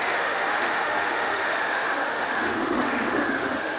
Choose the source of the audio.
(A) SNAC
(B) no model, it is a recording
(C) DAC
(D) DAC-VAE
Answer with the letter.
D